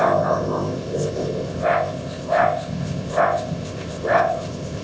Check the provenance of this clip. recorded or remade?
remade